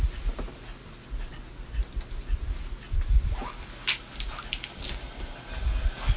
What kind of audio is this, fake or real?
real